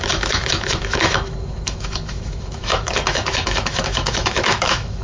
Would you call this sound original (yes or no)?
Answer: no